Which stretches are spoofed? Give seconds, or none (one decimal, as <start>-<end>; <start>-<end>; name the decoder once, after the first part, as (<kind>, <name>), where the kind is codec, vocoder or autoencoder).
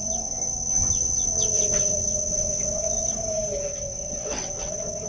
0.0-3.1 (vocoder, WaveNeXt); 3.7-5.1